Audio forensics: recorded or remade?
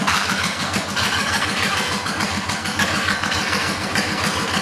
remade